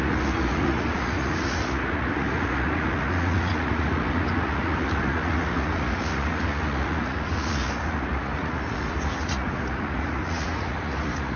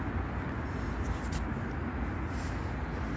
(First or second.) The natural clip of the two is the second